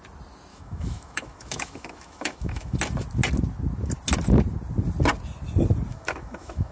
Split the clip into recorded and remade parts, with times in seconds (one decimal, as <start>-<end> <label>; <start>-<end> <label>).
0.0-0.5 recorded; 0.5-2.8 remade; 2.8-5.9 recorded; 5.9-6.7 remade